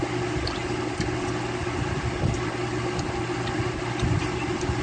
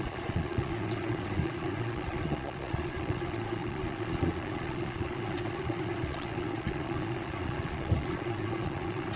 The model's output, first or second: second